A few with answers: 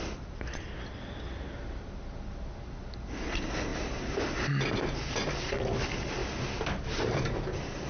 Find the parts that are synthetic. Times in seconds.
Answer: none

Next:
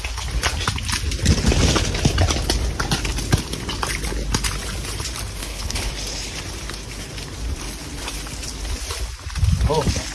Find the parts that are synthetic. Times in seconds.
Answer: 5.4-5.9 (codec, HILCodec)

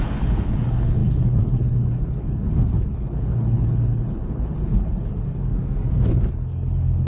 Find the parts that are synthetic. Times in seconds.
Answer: 0.0-5.5 (codec, HILCodec); 6.3-7.1

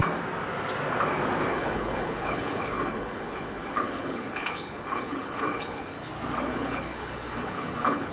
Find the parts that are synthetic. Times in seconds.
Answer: 1.5-6.1 (codec, HILCodec); 6.5-8.1

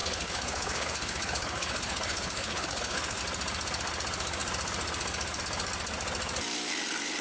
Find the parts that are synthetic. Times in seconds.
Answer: 0.0-3.2 (codec, HILCodec)

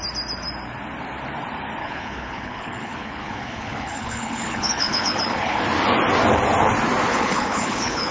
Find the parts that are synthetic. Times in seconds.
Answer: 1.8-5.6 (codec, HILCodec); 7.1-8.1